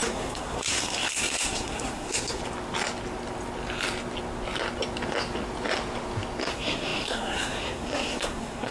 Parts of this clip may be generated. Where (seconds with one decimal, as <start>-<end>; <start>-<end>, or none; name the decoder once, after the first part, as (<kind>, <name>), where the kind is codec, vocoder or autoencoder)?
0.0-2.4 (codec, SNAC); 6.4-8.7